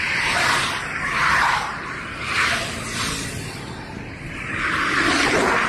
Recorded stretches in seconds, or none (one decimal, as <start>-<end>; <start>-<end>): 0.0-1.8; 5.2-5.7